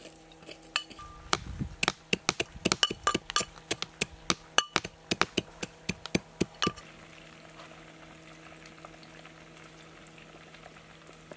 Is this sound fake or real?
real